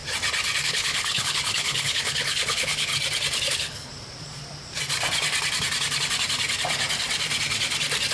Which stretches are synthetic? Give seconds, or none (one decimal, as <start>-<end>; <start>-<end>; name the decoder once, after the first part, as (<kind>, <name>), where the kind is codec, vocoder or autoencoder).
0.6-2.9 (codec, HILCodec); 3.5-3.9